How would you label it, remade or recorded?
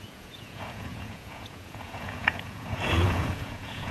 remade